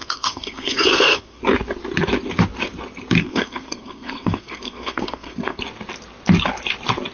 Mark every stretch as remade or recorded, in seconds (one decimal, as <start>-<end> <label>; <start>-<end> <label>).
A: 0.0-1.4 remade; 1.4-3.2 recorded; 3.2-5.6 remade; 5.6-7.1 recorded